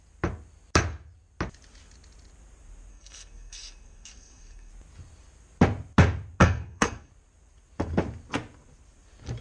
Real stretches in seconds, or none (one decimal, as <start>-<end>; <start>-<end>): 0.0-2.9; 4.7-6.4; 7.1-9.4